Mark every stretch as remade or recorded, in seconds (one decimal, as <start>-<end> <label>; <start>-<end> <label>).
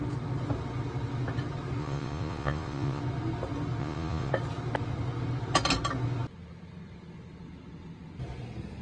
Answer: 0.0-1.8 recorded; 1.8-3.0 remade; 3.0-3.8 recorded; 3.8-4.3 remade; 4.3-8.8 recorded